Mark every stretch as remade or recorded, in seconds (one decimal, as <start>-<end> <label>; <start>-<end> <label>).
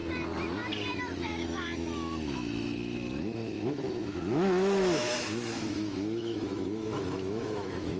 0.0-1.0 recorded; 1.0-8.0 remade